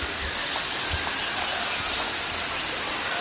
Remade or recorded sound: recorded